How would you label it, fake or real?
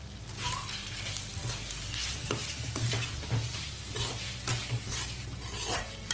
real